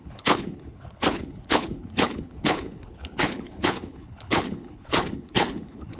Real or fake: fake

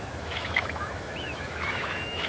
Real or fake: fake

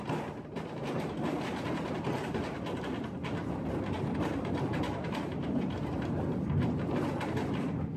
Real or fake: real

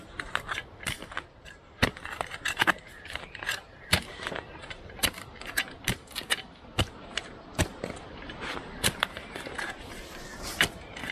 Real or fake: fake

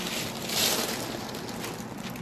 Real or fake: real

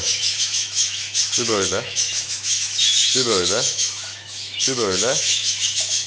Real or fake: fake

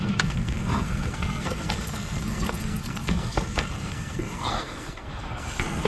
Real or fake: fake